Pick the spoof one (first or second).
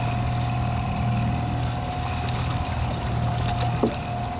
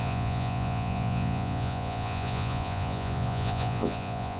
second